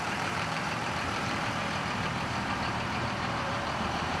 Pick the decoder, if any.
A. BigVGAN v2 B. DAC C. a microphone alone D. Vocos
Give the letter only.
A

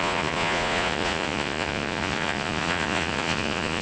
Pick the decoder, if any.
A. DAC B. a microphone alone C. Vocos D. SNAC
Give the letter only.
C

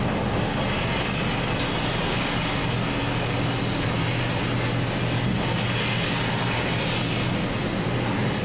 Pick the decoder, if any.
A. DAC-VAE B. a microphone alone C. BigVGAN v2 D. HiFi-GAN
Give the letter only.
B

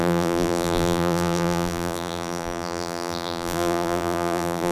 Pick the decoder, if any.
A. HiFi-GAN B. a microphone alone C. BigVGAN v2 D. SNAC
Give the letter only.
C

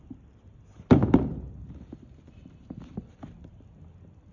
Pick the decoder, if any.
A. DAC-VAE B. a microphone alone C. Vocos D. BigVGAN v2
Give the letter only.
D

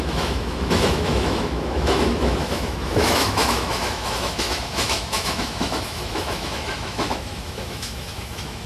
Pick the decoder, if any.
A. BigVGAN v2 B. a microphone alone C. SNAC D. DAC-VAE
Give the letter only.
D